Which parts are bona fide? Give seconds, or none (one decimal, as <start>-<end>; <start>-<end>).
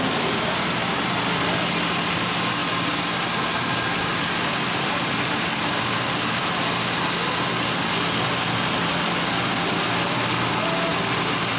0.0-11.6